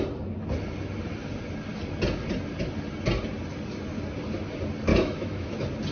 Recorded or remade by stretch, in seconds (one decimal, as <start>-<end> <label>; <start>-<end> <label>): 0.0-4.9 recorded; 4.9-5.5 remade; 5.5-5.9 recorded